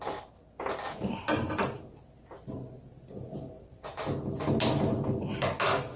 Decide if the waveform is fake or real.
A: real